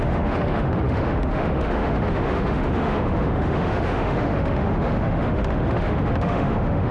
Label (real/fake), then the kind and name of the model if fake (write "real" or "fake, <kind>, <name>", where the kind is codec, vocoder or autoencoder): fake, autoencoder, DAC-VAE